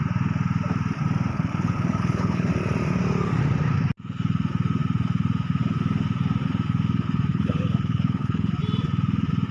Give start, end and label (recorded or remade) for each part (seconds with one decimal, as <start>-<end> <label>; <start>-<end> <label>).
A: 0.0-1.3 recorded; 1.3-2.5 remade; 2.5-7.3 recorded; 7.3-8.5 remade; 8.5-9.5 recorded